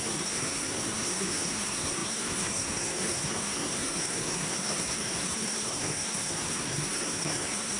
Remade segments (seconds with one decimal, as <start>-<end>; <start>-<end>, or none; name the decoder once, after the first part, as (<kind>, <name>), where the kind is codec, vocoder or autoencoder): 0.0-7.8 (codec, SNAC)